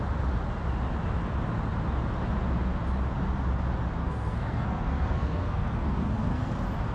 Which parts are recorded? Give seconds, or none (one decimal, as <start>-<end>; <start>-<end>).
0.0-4.0; 6.5-6.9